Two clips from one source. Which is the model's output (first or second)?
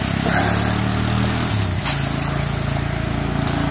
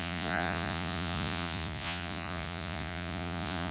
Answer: second